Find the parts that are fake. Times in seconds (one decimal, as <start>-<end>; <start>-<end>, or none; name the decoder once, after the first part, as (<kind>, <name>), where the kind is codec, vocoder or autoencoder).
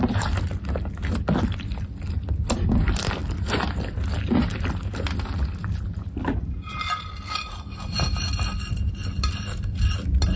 none